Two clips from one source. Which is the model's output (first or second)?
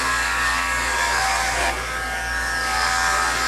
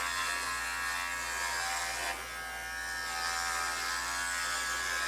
first